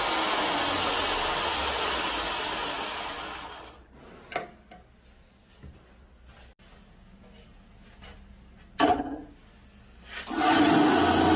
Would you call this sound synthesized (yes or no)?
no